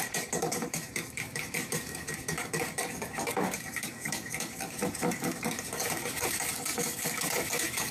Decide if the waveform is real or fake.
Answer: fake